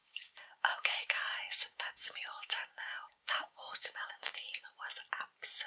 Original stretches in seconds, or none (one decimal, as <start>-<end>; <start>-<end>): 1.2-1.7; 4.7-5.7